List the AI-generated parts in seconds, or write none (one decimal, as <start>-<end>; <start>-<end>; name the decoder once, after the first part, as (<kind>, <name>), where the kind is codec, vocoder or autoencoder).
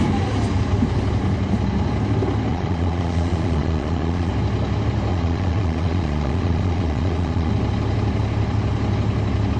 2.5-4.3 (vocoder, Vocos); 5.1-7.5